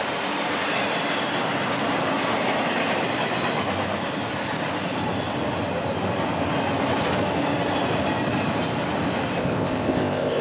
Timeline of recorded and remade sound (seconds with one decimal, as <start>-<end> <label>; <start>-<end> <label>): 0.0-9.4 recorded; 9.4-10.4 remade